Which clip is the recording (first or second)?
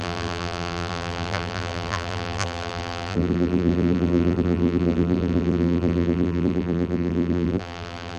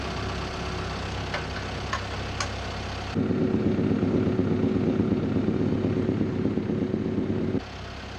second